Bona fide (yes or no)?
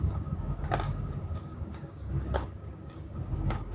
no